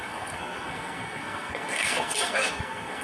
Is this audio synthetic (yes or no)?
yes